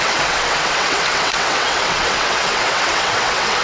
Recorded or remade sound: remade